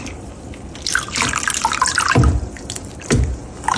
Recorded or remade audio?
remade